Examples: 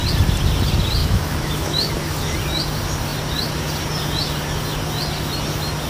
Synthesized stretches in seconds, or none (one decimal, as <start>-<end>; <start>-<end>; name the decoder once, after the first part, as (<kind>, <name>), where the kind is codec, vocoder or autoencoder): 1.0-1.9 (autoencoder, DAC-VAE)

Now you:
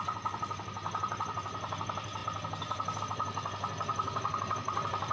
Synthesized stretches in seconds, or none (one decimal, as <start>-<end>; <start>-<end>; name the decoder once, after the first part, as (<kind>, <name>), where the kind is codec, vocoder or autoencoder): none

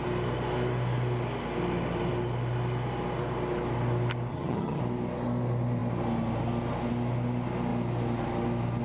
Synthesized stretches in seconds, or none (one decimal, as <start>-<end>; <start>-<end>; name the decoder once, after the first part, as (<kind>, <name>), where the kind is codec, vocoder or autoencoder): 4.3-4.8 (vocoder, HiFi-GAN)

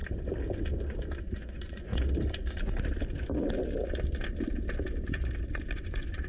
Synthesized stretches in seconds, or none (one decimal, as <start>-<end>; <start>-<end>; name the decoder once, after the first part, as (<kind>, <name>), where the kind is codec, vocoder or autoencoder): 1.2-1.9 (vocoder, Vocos); 5.7-6.3

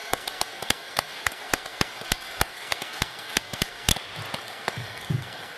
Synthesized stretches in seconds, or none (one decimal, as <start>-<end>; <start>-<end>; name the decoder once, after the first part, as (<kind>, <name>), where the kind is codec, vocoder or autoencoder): 0.0-3.9 (codec, SNAC); 4.4-5.6